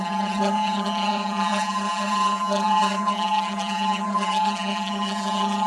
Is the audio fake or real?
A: fake